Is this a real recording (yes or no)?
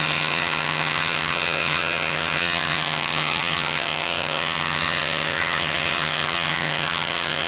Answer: no